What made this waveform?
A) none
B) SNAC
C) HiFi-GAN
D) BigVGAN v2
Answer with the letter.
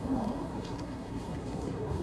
B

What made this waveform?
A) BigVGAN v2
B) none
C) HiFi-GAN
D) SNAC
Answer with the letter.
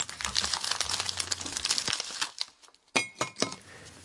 B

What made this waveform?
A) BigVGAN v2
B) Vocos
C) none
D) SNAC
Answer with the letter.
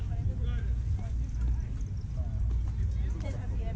C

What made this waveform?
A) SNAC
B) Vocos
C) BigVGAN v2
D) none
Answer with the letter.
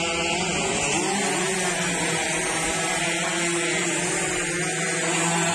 D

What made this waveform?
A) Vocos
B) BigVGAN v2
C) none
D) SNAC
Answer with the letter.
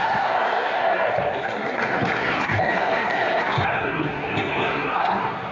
D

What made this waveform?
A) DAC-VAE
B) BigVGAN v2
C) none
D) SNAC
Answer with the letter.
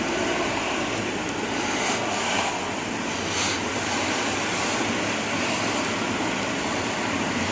C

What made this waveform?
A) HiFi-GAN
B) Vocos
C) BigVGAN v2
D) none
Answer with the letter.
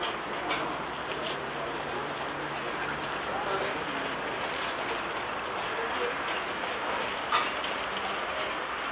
D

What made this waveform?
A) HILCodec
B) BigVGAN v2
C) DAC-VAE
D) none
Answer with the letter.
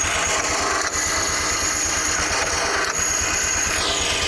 D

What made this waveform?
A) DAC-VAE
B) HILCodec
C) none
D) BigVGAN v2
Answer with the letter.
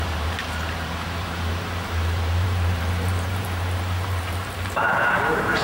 D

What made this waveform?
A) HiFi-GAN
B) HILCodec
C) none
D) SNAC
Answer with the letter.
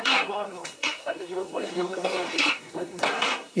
D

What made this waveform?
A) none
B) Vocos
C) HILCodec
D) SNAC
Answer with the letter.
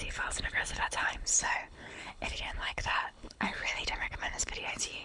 C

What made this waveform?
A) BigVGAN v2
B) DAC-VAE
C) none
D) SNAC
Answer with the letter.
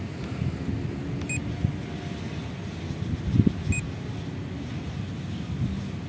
C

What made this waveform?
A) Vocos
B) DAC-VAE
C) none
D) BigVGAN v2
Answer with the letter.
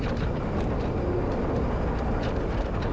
C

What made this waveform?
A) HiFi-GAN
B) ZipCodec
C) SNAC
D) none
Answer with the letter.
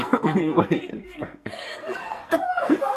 C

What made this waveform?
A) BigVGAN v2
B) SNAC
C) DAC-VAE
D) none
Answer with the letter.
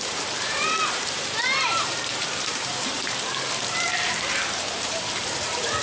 A